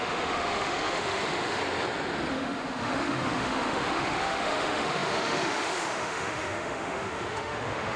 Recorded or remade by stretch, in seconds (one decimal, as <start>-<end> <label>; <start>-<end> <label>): 0.0-1.6 remade; 1.6-2.3 recorded; 2.3-8.0 remade